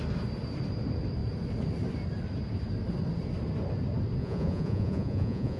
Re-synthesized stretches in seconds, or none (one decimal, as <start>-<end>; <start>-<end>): 4.2-5.6